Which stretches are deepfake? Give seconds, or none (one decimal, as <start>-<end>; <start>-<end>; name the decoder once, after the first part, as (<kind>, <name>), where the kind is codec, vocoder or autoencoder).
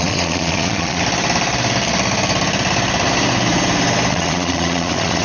0.0-1.0 (vocoder, Vocos); 4.1-5.2